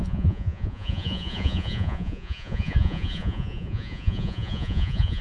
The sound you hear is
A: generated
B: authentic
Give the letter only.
A